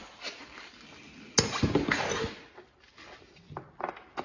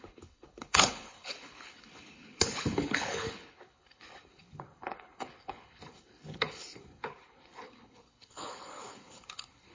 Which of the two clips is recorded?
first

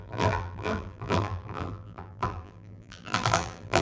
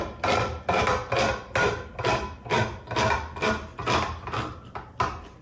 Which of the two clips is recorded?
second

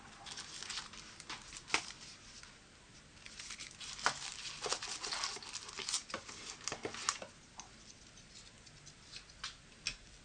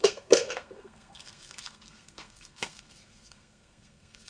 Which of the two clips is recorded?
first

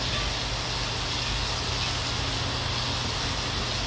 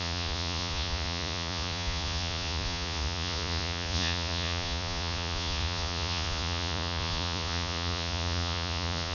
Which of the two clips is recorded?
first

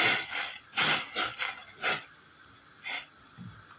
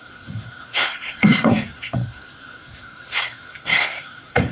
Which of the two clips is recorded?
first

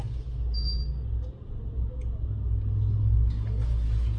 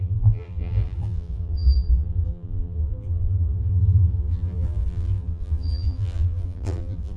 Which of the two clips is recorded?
first